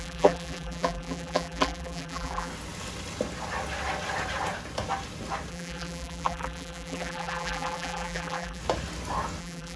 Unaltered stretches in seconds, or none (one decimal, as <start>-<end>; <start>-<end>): 2.5-5.5; 8.6-9.4